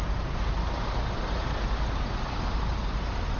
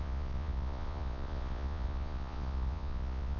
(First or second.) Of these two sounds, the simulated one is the second